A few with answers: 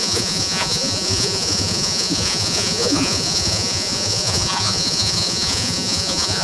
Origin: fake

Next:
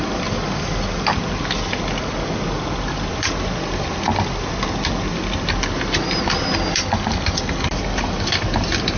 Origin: real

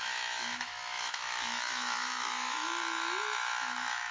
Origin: fake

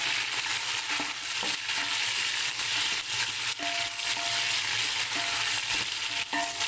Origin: real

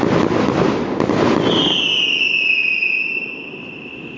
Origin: real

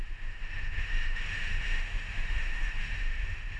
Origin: fake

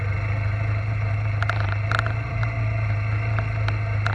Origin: real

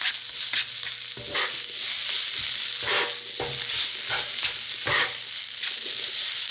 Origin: real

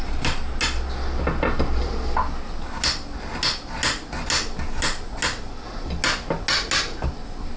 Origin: real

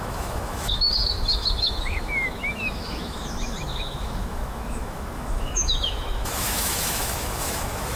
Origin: fake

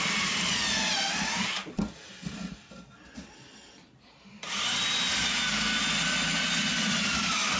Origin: real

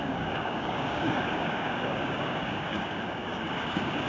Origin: fake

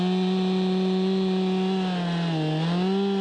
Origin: real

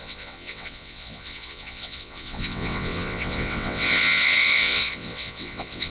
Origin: fake